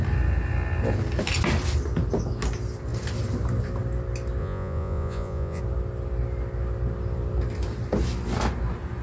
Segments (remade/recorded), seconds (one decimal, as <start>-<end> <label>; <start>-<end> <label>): 0.0-4.4 recorded; 4.4-5.6 remade; 5.6-9.0 recorded

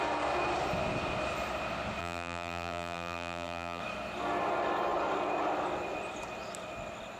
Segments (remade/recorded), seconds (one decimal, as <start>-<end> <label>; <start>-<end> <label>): 0.0-2.0 recorded; 2.0-3.8 remade; 3.8-7.2 recorded

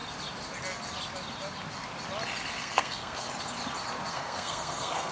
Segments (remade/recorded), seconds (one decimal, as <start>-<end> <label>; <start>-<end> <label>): 0.0-2.6 recorded; 2.6-3.3 remade; 3.3-4.1 recorded; 4.1-5.1 remade

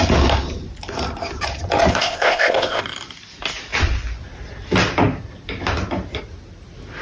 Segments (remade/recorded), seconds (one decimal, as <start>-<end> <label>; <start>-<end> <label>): 0.0-1.9 recorded; 1.9-2.8 remade; 2.8-7.0 recorded

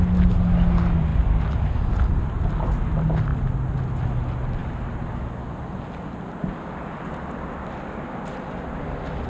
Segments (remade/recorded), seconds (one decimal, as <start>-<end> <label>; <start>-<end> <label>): 0.0-9.3 recorded

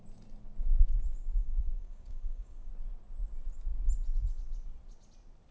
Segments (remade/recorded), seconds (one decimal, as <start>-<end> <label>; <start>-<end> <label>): 0.0-1.4 recorded; 1.4-2.7 remade; 2.7-5.5 recorded

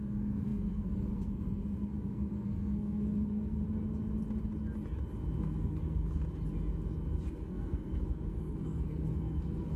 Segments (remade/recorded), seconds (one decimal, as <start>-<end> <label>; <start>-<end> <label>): 0.0-3.6 remade; 3.6-5.4 recorded; 5.4-6.2 remade; 6.2-7.3 recorded; 7.3-9.8 remade

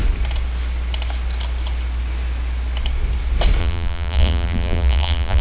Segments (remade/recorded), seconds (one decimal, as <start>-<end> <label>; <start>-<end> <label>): 0.0-3.6 recorded; 3.6-5.4 remade